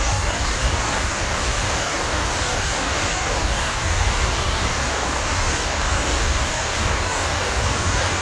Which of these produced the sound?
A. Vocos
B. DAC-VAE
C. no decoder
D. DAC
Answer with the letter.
D